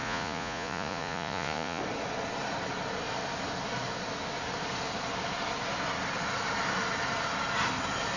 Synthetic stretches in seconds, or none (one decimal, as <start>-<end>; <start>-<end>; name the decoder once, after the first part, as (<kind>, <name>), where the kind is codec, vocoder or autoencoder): 0.0-1.8 (vocoder, Vocos)